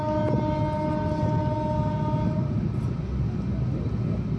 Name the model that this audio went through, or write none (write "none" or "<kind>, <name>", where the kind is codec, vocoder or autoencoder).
none